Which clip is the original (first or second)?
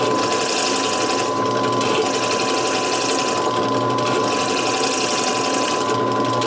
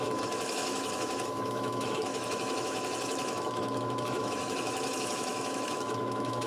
first